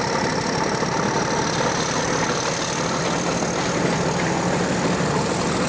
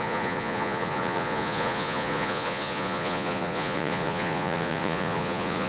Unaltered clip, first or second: first